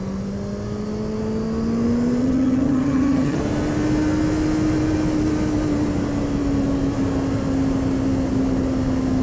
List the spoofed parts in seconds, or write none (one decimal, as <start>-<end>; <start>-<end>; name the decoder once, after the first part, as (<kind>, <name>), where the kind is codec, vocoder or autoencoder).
2.2-3.4 (vocoder, HiFi-GAN)